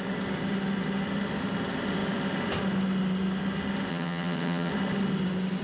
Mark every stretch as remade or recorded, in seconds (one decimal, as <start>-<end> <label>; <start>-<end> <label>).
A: 0.0-3.9 recorded; 3.9-4.7 remade; 4.7-5.6 recorded